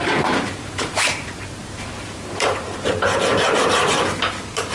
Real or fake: fake